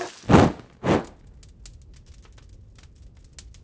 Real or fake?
real